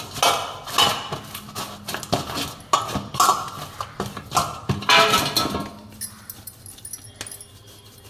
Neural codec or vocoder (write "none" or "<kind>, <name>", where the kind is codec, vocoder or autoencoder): none